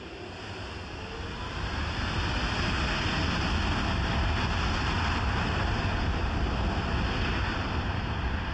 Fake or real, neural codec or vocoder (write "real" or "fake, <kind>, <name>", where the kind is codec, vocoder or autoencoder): real